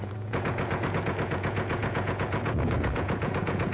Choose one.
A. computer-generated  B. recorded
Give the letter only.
A